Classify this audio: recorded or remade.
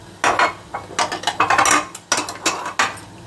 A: recorded